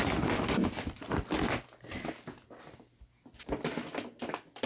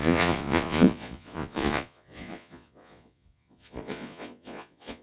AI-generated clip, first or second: second